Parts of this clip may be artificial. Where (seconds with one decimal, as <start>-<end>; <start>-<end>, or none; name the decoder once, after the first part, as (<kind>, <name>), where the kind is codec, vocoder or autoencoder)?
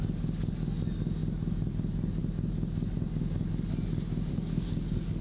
4.3-5.2 (codec, SNAC)